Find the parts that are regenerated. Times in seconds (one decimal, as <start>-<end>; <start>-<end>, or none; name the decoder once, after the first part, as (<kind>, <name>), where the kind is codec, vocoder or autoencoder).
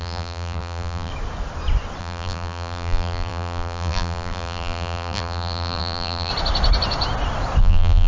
0.0-1.1 (vocoder, BigVGAN v2); 2.0-6.3; 7.6-8.1